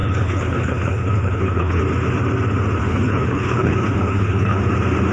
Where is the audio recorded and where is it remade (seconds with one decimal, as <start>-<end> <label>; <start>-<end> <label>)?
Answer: 0.0-1.8 remade; 1.8-2.8 recorded; 2.8-4.6 remade; 4.6-5.1 recorded